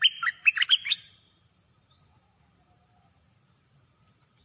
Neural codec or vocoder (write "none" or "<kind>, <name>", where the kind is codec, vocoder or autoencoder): vocoder, BigVGAN v2